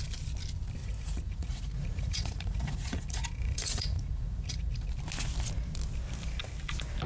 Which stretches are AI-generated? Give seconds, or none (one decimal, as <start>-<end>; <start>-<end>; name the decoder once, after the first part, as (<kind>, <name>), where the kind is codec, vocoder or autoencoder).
0.8-4.9 (vocoder, Vocos)